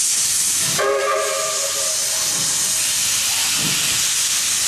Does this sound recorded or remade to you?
remade